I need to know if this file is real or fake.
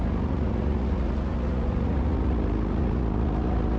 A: fake